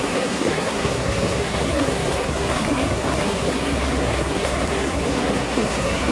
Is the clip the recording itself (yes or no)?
no